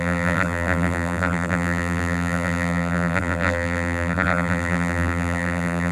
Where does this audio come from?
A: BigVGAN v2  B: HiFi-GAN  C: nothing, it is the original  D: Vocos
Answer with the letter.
A